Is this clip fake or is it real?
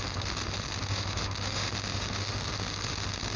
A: fake